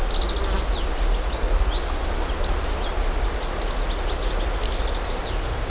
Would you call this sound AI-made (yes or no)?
no